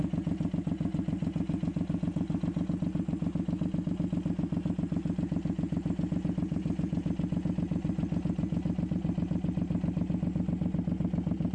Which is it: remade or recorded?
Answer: recorded